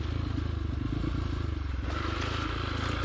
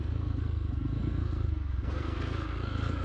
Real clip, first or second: first